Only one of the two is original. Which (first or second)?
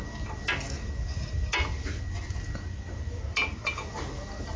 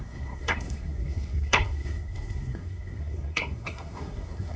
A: first